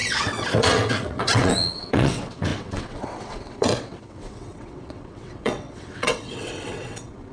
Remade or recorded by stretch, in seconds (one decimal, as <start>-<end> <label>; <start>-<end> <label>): 0.0-7.3 remade